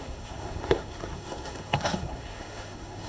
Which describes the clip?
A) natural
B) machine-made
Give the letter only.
B